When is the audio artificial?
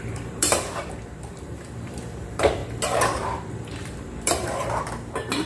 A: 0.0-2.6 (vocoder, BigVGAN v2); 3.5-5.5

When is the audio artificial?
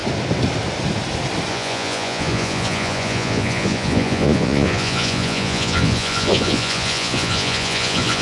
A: 1.5-8.2 (vocoder, Vocos)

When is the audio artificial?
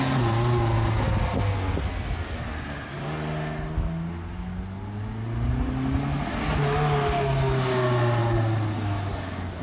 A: none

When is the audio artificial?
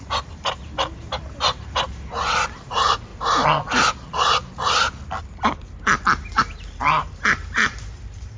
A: 0.0-3.1 (vocoder, BigVGAN v2); 6.4-8.4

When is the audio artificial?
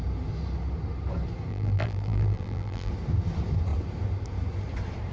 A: 1.5-2.9 (vocoder, BigVGAN v2)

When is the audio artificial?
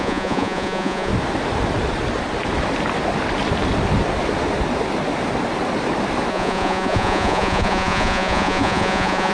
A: 0.0-1.1 (vocoder, Vocos); 6.3-9.3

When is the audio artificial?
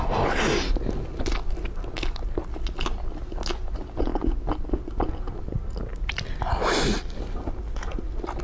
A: none